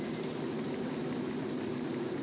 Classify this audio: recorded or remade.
recorded